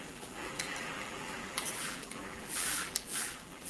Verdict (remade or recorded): remade